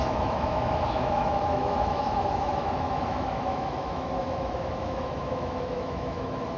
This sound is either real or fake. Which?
fake